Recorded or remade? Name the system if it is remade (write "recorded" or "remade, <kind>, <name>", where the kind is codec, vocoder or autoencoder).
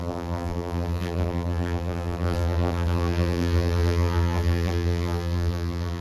remade, vocoder, BigVGAN v2